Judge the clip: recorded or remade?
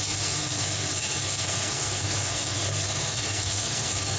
remade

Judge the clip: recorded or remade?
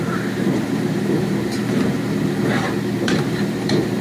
remade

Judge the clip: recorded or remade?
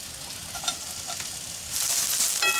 recorded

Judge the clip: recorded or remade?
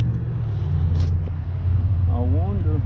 recorded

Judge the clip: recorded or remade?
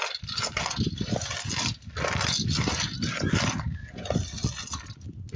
recorded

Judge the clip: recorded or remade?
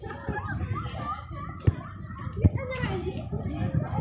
recorded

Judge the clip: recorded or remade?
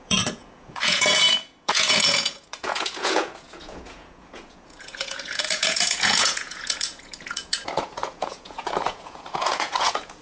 remade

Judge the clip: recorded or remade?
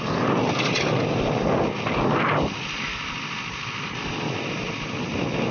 recorded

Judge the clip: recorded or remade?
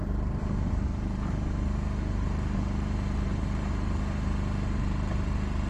remade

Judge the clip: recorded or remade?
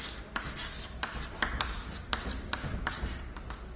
recorded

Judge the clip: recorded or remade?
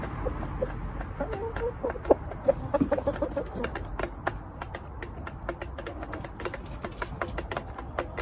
recorded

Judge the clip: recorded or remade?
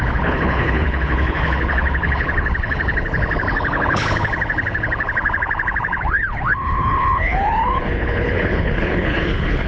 remade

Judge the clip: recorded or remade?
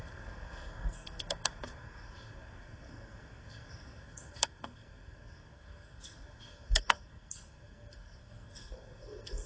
remade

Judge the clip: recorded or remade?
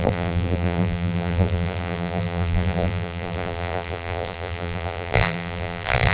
remade